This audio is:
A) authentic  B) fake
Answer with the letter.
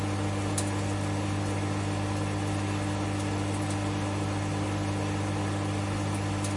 A